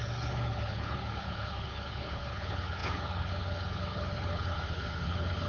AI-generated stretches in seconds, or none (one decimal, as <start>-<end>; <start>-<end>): 0.0-5.5